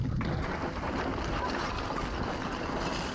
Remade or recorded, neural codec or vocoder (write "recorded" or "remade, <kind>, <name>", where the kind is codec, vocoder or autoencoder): recorded